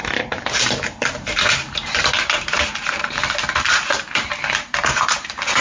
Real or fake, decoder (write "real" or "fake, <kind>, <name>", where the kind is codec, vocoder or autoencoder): fake, vocoder, BigVGAN v2